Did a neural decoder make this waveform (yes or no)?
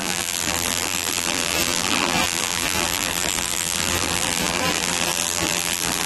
yes